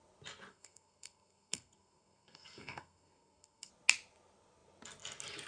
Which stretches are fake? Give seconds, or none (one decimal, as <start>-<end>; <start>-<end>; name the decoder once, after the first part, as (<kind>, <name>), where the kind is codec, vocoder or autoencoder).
0.5-3.7 (codec, SNAC)